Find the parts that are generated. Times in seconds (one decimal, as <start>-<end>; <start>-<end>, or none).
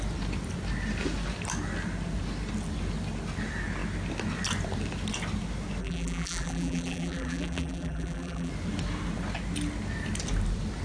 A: 5.8-8.5